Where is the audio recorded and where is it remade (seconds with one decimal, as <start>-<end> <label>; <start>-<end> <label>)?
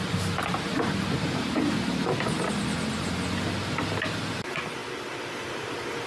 0.0-1.4 recorded; 1.4-2.5 remade; 2.5-6.1 recorded